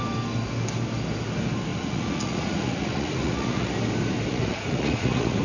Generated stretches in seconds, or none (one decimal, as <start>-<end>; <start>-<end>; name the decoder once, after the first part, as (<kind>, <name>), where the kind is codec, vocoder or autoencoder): 1.7-3.7 (vocoder, Vocos); 4.3-5.4